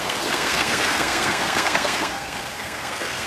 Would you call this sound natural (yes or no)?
no